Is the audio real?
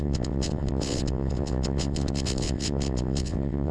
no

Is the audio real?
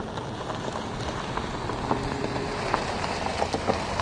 yes